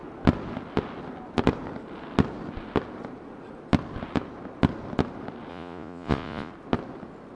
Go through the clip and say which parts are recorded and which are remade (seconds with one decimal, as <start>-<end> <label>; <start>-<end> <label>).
0.0-5.5 recorded; 5.5-6.5 remade; 6.5-7.4 recorded